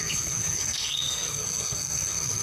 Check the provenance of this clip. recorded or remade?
remade